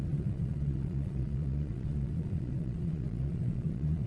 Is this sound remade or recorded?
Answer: remade